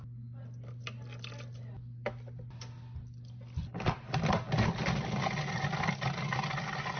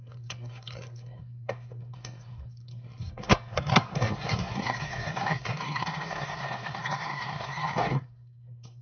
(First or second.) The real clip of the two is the first